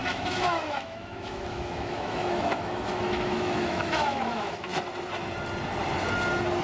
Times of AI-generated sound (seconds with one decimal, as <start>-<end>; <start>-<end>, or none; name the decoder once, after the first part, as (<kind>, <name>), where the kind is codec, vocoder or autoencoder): 0.0-4.7 (autoencoder, DAC-VAE)